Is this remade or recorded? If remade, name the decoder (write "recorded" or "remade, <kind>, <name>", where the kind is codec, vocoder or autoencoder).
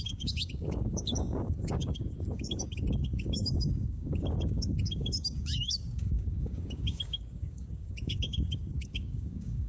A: remade, codec, DAC